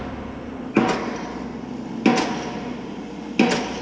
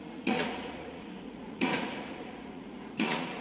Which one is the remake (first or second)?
second